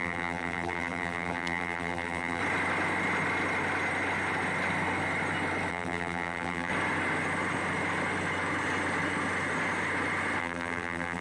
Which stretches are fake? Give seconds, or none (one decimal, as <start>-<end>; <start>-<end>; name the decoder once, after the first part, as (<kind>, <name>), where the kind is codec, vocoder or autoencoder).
0.0-2.4 (vocoder, BigVGAN v2); 5.7-6.7; 10.4-11.2